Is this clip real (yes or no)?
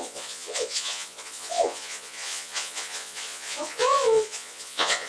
no